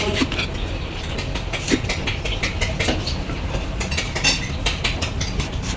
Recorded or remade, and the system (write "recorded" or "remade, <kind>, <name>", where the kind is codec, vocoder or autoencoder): recorded